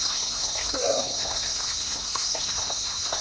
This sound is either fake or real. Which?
fake